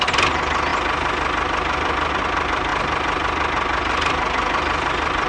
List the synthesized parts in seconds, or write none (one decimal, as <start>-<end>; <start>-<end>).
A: none